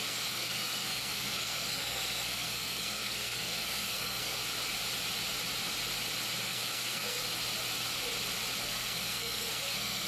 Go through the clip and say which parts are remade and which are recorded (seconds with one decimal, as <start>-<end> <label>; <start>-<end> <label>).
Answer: 0.0-4.4 remade; 4.4-6.4 recorded; 6.4-7.2 remade; 7.2-8.6 recorded; 8.6-10.1 remade